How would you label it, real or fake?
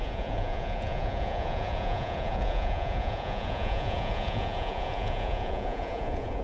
fake